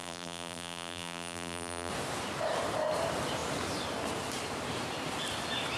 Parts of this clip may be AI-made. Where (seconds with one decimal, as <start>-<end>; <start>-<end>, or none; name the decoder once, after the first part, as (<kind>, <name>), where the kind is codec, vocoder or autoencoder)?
0.0-1.9 (vocoder, BigVGAN v2)